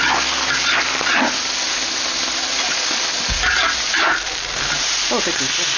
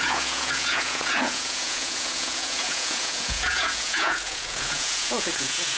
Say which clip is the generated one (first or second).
second